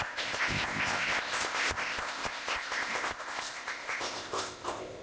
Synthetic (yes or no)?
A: yes